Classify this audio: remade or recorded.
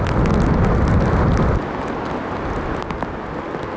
recorded